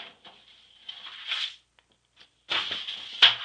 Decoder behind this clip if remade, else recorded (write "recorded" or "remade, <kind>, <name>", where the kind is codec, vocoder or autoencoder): recorded